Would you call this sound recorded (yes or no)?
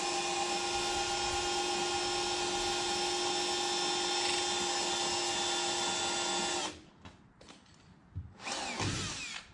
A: yes